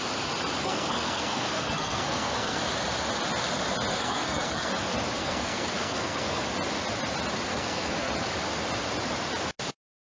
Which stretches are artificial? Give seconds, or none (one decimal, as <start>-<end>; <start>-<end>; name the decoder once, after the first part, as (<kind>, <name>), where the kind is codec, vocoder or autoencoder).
0.6-2.6 (codec, SNAC); 3.9-4.7; 5.2-6.4; 7.5-8.1